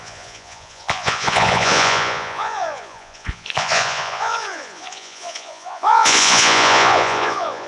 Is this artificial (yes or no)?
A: yes